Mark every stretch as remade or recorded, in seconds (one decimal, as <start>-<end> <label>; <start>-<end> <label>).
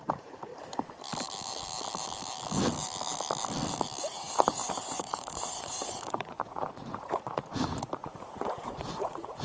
0.0-0.5 remade; 0.5-4.0 recorded; 4.0-9.4 remade